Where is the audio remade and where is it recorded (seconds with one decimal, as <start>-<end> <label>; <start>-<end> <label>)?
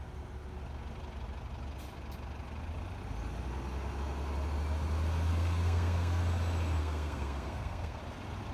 0.0-5.3 recorded; 5.3-6.2 remade; 6.2-6.8 recorded; 6.8-8.0 remade; 8.0-8.5 recorded